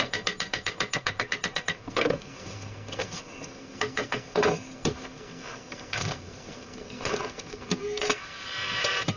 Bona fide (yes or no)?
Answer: no